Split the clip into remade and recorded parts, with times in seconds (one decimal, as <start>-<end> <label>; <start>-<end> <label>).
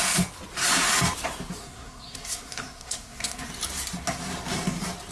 0.0-1.6 recorded; 1.6-3.5 remade; 3.5-5.1 recorded